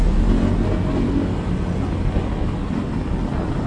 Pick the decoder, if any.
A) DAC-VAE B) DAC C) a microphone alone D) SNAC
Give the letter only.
C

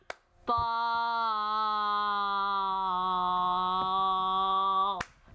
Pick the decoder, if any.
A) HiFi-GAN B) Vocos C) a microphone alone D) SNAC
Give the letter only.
C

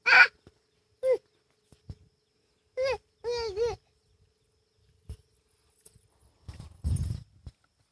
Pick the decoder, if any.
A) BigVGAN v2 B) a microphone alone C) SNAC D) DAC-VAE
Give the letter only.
B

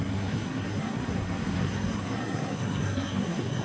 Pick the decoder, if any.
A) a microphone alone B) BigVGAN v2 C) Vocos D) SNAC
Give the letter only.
D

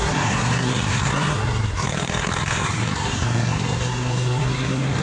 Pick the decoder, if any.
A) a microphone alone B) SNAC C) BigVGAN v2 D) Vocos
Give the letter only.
B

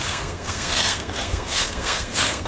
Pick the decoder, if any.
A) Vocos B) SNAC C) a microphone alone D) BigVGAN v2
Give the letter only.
B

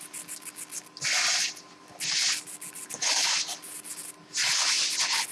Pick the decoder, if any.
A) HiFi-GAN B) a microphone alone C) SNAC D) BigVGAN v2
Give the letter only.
B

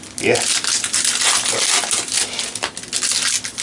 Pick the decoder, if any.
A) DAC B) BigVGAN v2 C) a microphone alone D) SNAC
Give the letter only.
C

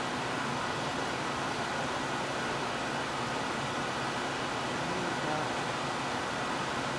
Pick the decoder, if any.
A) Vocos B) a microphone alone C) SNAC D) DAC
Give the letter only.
B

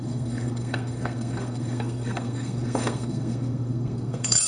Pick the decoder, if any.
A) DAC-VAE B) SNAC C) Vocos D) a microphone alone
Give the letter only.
B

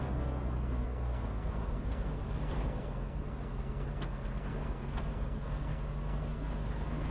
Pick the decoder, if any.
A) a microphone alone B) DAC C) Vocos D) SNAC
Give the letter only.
D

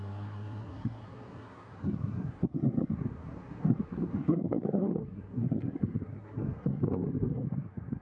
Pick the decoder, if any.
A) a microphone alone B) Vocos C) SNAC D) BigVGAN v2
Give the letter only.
C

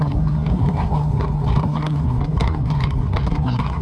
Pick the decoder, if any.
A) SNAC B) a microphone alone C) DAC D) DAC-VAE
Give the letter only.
A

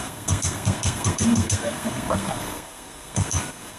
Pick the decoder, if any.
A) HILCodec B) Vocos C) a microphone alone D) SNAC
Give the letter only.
D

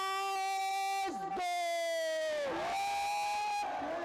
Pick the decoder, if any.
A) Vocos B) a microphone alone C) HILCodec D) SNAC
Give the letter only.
B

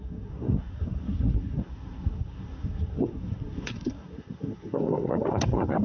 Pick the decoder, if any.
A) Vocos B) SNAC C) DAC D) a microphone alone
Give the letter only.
B